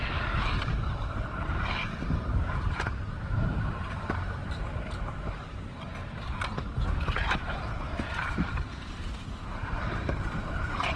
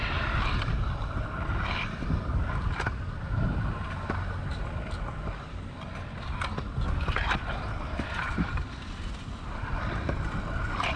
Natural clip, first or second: second